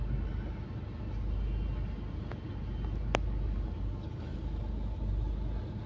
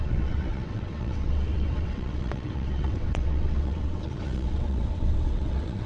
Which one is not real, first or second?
second